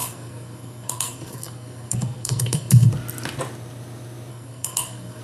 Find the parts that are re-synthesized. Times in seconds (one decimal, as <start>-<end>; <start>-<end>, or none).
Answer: 0.0-2.9; 4.3-5.2